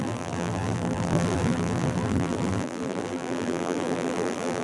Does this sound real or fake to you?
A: fake